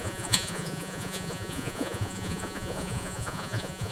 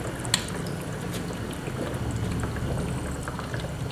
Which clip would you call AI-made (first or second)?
first